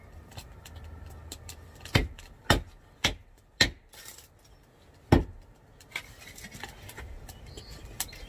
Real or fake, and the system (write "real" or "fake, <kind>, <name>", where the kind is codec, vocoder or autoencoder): real